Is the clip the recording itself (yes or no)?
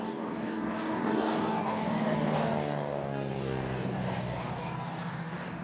no